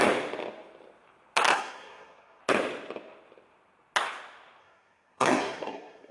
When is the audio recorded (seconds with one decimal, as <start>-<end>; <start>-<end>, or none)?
0.0-1.5; 2.4-4.6